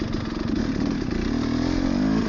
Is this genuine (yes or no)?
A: yes